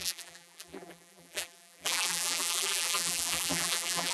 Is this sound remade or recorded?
remade